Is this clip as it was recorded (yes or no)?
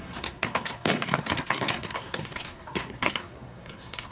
no